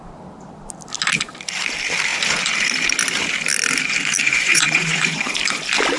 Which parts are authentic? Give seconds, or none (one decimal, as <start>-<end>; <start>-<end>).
0.0-4.2; 5.3-6.0